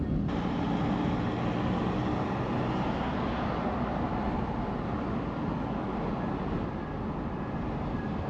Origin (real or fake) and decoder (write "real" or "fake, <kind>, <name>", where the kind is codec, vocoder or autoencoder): real